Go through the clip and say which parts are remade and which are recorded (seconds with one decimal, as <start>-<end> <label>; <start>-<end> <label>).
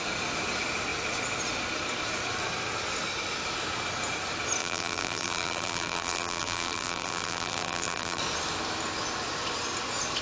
0.0-4.6 recorded; 4.6-8.2 remade; 8.2-10.2 recorded